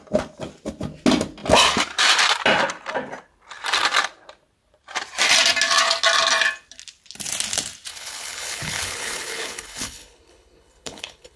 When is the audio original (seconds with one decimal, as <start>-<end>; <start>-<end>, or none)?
0.0-7.9